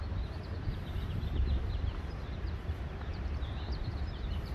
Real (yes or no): no